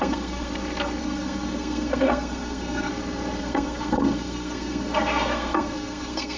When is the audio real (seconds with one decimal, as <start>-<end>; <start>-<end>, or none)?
0.5-1.0; 2.9-3.4